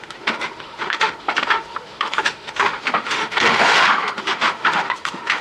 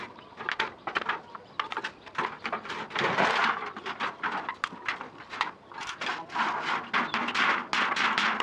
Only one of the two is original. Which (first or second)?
second